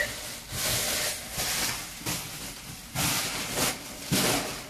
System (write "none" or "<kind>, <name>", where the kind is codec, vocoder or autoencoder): none